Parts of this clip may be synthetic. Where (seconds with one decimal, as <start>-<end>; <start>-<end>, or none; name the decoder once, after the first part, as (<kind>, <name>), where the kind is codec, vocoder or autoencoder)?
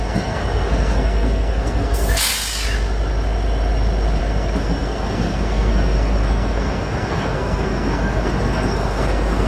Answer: 0.0-2.3 (codec, SNAC); 4.2-9.5